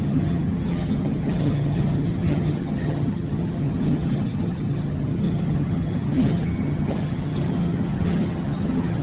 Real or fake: fake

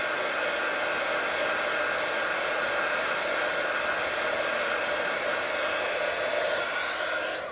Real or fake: real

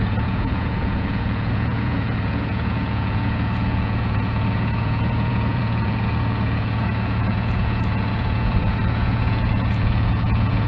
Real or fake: fake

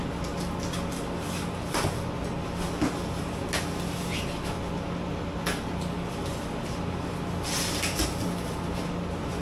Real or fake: real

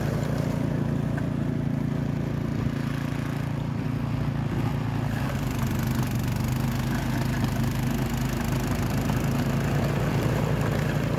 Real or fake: real